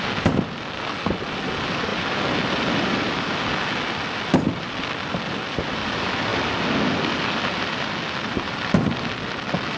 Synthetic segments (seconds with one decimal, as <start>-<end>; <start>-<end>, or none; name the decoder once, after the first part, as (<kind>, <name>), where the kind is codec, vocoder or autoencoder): none